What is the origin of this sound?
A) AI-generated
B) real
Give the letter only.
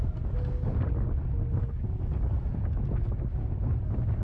B